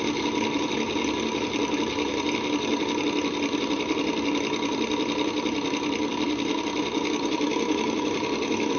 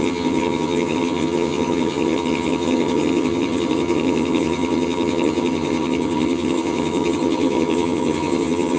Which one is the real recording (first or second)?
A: first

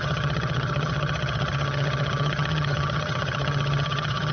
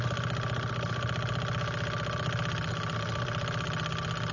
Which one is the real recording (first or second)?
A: second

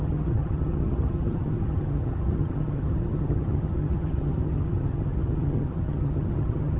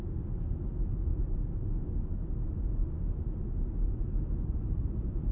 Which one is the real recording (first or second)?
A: second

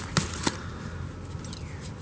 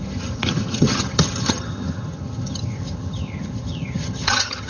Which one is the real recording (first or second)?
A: first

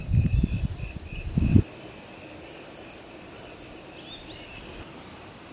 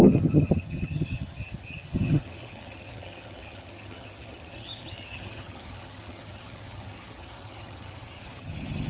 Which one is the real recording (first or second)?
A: first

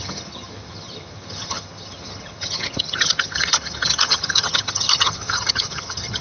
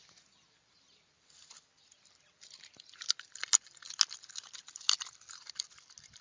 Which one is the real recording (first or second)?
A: second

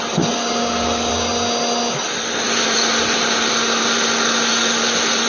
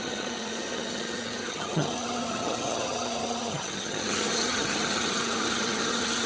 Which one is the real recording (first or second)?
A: first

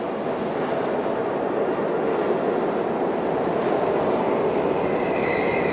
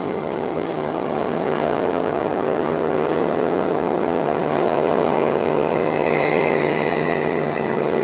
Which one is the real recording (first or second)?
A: first